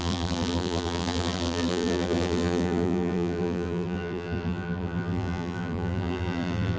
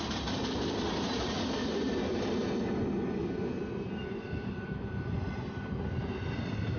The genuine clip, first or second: second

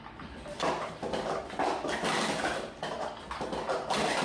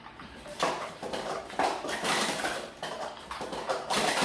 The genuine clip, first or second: first